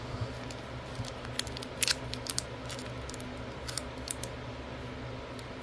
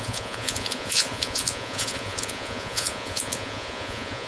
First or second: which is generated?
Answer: second